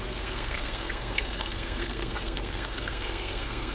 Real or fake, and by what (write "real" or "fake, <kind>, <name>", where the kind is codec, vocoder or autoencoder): fake, codec, SNAC